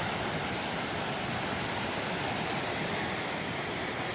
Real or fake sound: real